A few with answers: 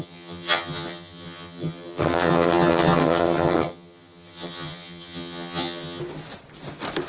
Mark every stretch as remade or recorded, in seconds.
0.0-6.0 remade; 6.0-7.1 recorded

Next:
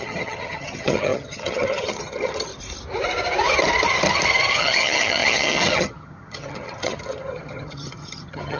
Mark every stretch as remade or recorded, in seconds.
0.0-2.5 remade; 2.5-4.5 recorded; 4.5-8.6 remade

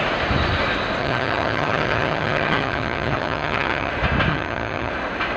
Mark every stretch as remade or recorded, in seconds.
0.0-1.0 recorded; 1.0-3.9 remade; 3.9-4.3 recorded; 4.3-4.9 remade; 4.9-5.4 recorded

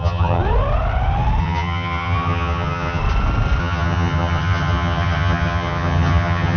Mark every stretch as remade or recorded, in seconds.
0.0-0.4 remade; 0.4-1.4 recorded; 1.4-3.0 remade; 3.0-3.6 recorded; 3.6-6.6 remade

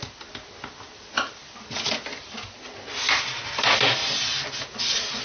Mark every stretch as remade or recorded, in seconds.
0.0-5.2 recorded

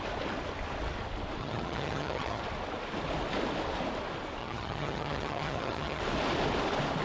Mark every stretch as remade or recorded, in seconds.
0.0-1.4 recorded; 1.4-2.4 remade; 2.4-4.4 recorded; 4.4-6.0 remade; 6.0-7.0 recorded

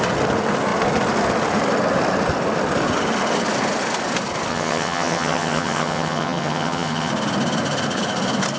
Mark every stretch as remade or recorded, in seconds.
0.0-4.5 recorded; 4.5-7.1 remade; 7.1-8.6 recorded